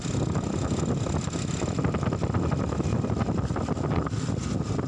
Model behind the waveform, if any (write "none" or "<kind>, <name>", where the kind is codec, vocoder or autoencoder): none